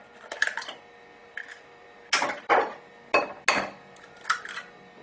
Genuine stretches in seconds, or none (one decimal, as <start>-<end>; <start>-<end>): 0.0-5.0